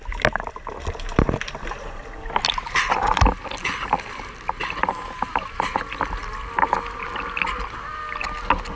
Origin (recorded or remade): recorded